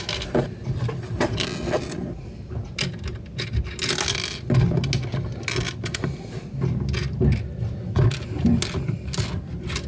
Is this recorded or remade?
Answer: recorded